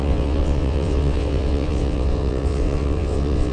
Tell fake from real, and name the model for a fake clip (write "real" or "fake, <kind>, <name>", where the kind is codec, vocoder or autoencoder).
fake, vocoder, WaveNeXt